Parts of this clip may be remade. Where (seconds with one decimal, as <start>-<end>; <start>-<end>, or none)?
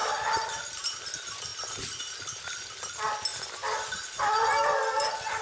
0.0-0.7